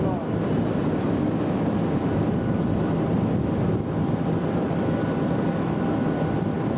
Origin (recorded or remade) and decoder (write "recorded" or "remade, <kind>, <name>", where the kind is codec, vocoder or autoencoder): recorded